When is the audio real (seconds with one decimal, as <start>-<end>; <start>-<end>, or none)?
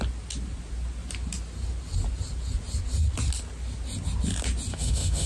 0.0-4.7